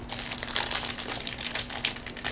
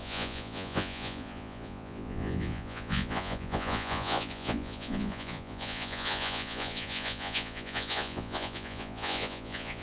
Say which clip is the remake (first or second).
second